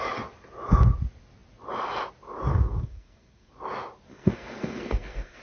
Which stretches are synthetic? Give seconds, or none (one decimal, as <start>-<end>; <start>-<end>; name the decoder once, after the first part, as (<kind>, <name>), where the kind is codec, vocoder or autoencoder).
2.5-3.5 (codec, SNAC); 4.1-5.4